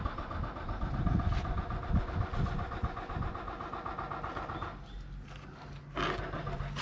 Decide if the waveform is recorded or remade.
recorded